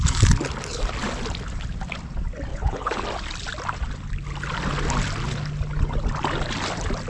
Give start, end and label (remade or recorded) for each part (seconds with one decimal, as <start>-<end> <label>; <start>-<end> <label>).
0.0-2.5 recorded; 2.5-3.0 remade; 3.0-7.1 recorded